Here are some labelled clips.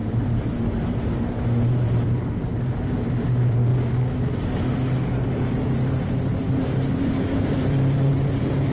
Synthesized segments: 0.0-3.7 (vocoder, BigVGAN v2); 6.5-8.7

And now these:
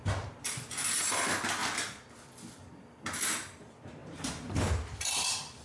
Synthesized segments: 1.6-3.2 (vocoder, BigVGAN v2)